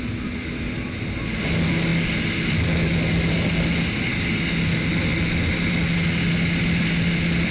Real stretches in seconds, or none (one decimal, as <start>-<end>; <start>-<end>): 0.0-7.5